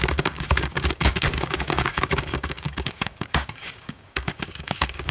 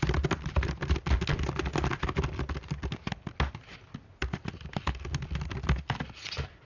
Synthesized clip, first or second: first